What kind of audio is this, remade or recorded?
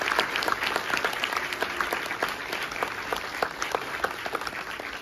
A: recorded